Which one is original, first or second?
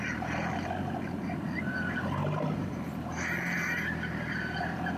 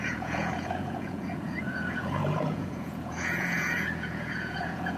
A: first